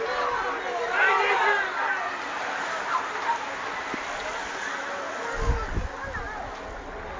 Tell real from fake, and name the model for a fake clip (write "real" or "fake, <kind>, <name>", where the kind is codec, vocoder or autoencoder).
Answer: real